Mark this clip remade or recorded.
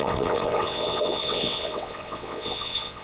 remade